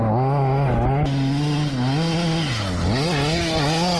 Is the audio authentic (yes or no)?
yes